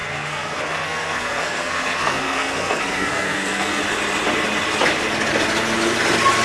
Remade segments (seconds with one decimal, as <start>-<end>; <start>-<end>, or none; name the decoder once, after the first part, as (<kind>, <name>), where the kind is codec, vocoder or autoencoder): 0.0-3.8 (codec, SNAC)